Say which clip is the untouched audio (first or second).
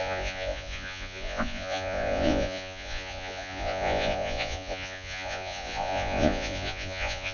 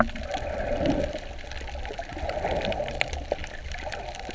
second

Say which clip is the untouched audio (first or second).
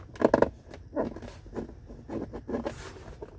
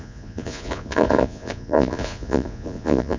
first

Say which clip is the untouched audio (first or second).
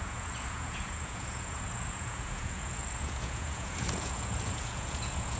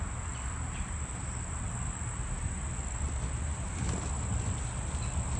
second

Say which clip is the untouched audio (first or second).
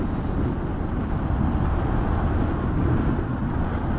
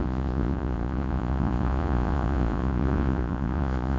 first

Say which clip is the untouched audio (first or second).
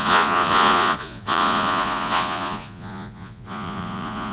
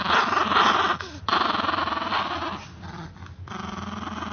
second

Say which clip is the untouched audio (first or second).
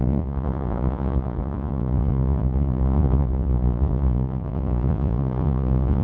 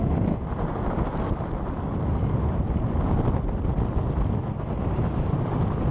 second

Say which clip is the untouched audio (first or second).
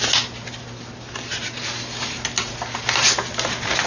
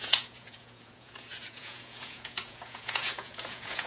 first